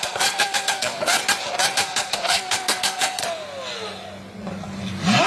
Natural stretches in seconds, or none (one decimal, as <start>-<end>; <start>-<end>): 1.2-1.7; 3.2-5.3